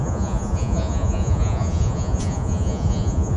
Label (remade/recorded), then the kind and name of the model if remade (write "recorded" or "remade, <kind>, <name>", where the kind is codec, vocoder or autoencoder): remade, vocoder, Vocos